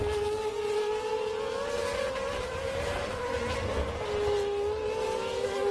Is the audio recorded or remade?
recorded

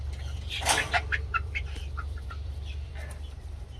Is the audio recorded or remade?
remade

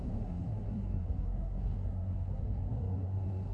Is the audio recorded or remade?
remade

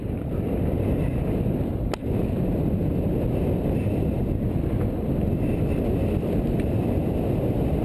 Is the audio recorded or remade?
recorded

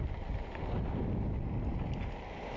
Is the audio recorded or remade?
recorded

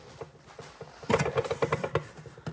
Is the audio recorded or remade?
recorded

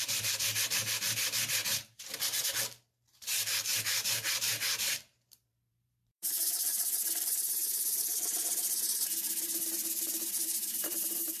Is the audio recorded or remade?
remade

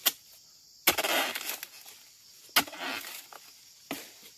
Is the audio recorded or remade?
recorded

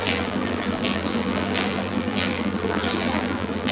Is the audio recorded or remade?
remade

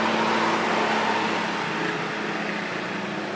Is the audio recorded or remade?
recorded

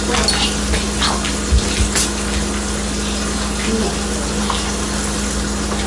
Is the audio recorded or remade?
recorded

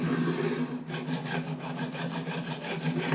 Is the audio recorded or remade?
recorded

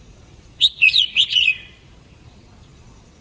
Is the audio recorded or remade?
remade